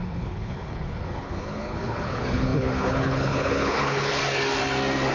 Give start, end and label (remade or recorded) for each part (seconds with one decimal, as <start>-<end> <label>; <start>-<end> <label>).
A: 0.0-4.2 remade; 4.2-5.1 recorded